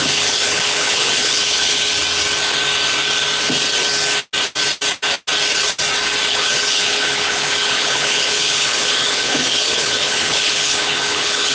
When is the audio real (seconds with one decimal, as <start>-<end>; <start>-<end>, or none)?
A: 1.9-6.3